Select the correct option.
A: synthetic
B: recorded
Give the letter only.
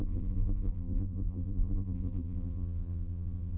A